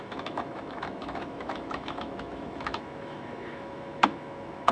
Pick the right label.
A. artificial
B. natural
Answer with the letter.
A